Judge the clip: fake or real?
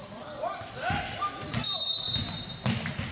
real